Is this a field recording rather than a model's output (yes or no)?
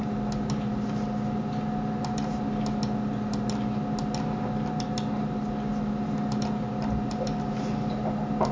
yes